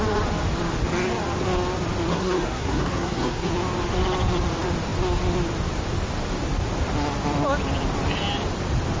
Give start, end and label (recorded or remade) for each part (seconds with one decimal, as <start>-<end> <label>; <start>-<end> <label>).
0.0-2.1 recorded; 2.1-3.5 remade; 3.5-9.0 recorded